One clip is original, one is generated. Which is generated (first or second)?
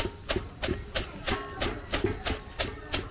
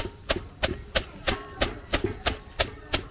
second